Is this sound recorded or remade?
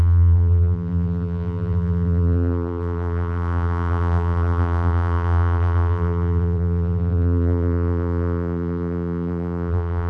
remade